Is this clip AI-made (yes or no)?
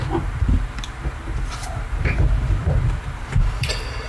yes